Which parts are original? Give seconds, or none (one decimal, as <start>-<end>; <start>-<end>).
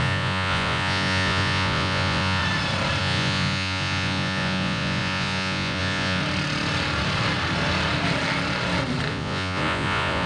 2.4-3.0; 6.2-9.1